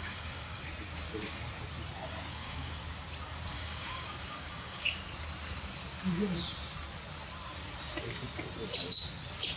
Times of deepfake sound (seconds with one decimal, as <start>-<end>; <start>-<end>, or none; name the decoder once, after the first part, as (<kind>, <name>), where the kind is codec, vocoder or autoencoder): 0.0-0.6 (codec, DAC); 2.3-2.8; 3.5-5.0